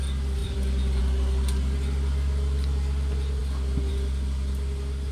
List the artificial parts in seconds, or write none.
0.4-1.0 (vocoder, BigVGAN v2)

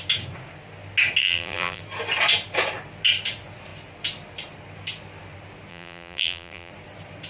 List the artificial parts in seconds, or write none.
1.2-1.8 (vocoder, BigVGAN v2); 5.7-6.7

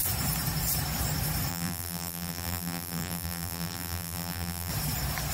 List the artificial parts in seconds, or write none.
1.5-4.7 (vocoder, BigVGAN v2)

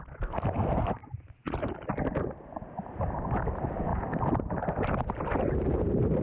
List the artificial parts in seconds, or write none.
none